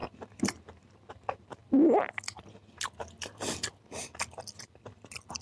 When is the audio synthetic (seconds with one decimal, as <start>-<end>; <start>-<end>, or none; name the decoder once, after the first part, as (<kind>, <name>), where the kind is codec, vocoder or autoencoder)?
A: 0.0-1.1 (vocoder, BigVGAN v2)